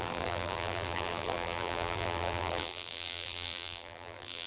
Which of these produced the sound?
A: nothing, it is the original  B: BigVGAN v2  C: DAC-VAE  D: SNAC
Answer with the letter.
B